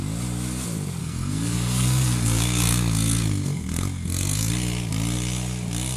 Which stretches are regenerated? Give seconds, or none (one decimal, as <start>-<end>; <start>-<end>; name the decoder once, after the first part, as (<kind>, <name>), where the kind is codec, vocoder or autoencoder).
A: 1.0-4.5 (codec, SNAC)